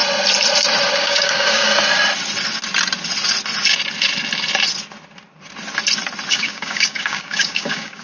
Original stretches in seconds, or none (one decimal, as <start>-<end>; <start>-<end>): 0.0-1.0; 1.7-6.3